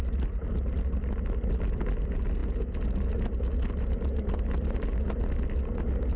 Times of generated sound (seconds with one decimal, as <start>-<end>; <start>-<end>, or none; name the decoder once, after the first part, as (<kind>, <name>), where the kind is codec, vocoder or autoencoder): none